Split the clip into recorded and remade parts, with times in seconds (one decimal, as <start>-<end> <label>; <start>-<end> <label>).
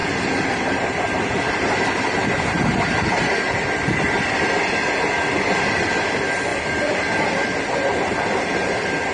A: 0.0-4.2 remade; 4.2-9.1 recorded